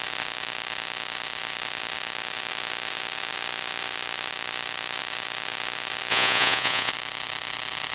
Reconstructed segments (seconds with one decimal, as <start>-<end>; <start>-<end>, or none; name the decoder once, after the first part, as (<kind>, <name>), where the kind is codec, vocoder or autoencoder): 6.1-6.9 (vocoder, Vocos)